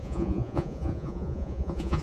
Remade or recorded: remade